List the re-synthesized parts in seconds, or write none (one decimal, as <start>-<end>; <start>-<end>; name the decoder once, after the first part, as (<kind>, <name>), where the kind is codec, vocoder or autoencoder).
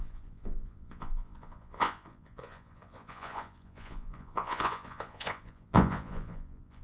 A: 0.0-6.8 (vocoder, Vocos)